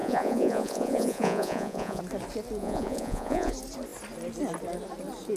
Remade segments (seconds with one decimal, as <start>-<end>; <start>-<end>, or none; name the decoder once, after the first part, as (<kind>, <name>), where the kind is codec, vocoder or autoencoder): 0.0-2.0 (vocoder, Vocos); 2.6-3.5